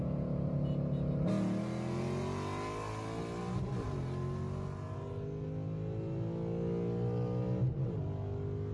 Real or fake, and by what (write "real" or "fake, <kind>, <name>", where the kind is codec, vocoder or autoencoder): real